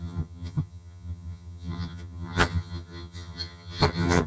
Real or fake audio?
fake